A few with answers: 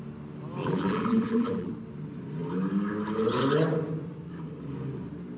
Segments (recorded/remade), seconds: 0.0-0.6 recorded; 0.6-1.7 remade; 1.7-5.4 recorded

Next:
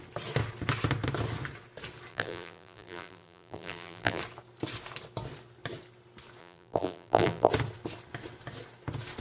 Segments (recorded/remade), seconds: 0.0-2.1 recorded; 2.1-4.2 remade; 4.2-6.4 recorded; 6.4-7.5 remade; 7.5-9.2 recorded

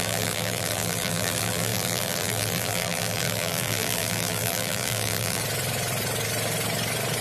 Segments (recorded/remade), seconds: 0.0-5.4 remade; 5.4-7.2 recorded

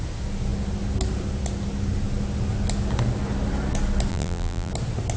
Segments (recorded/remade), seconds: 0.0-4.1 recorded; 4.1-4.7 remade; 4.7-5.2 recorded

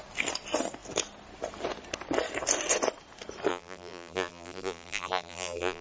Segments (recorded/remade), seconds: 0.0-3.5 recorded; 3.5-5.8 remade